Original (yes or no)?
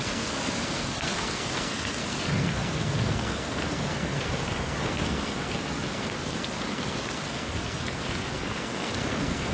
no